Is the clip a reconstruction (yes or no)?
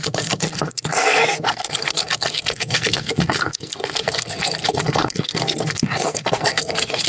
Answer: yes